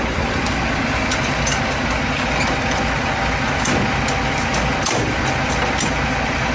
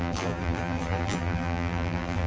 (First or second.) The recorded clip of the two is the first